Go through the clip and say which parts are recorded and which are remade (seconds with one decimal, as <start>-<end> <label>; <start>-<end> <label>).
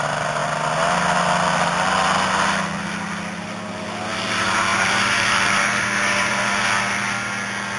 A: 0.0-4.7 recorded; 4.7-6.6 remade; 6.6-7.8 recorded